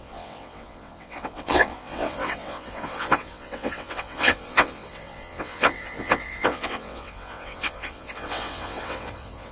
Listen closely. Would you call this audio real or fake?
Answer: fake